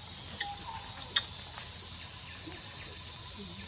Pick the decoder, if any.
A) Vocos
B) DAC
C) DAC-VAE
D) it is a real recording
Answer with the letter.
D